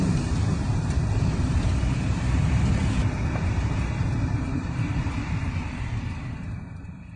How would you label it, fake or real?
fake